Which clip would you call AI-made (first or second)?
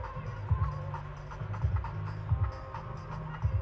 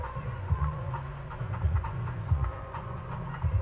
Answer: second